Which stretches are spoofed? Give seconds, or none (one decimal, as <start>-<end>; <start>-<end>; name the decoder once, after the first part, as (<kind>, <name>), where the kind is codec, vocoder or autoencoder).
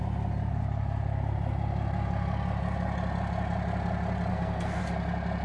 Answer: 4.3-4.8 (codec, SNAC)